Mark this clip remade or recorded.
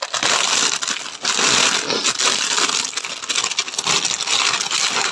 recorded